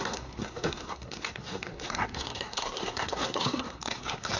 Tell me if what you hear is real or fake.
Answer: fake